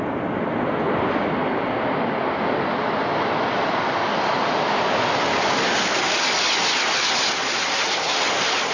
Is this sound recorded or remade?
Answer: recorded